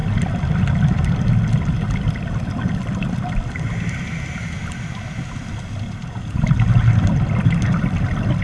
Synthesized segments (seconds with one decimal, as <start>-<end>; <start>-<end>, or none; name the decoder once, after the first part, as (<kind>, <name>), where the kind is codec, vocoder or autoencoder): none